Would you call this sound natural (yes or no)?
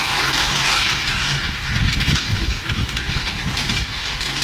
no